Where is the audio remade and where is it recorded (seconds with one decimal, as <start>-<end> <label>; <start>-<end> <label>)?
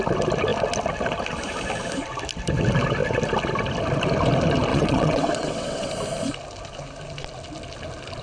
0.0-4.7 recorded; 4.7-5.9 remade; 5.9-8.2 recorded